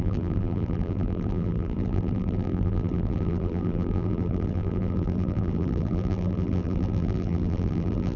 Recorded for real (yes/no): no